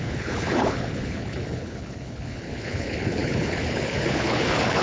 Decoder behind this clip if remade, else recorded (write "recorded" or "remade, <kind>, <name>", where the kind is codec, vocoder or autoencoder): remade, codec, HILCodec